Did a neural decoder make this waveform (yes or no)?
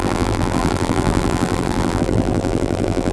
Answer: yes